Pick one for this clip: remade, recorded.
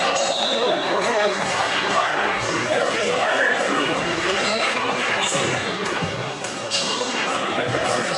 remade